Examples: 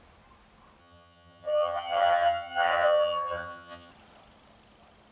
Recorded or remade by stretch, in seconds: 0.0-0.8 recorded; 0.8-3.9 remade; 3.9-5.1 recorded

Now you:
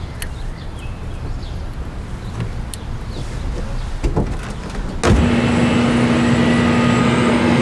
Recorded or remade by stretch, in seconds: 0.0-7.0 recorded; 7.0-7.6 remade

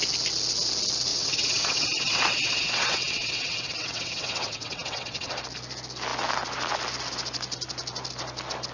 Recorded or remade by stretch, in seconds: 0.0-1.1 recorded; 1.1-5.3 remade; 5.3-8.7 recorded

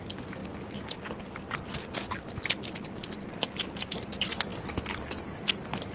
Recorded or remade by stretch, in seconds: 0.0-5.9 recorded

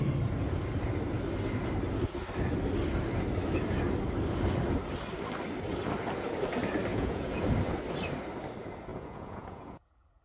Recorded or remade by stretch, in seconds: 0.0-6.9 recorded; 6.9-7.4 remade; 7.4-8.9 recorded; 8.9-10.2 remade

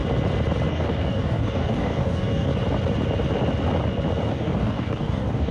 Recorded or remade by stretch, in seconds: 0.0-0.7 recorded; 0.7-2.5 remade; 2.5-4.3 recorded; 4.3-5.5 remade